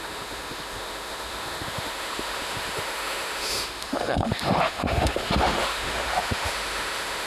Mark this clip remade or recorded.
remade